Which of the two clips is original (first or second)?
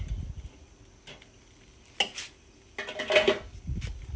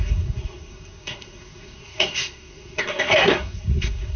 first